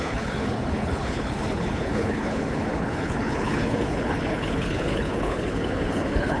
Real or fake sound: fake